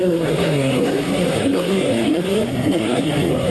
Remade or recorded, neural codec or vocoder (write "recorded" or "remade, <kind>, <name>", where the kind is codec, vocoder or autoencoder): remade, codec, SNAC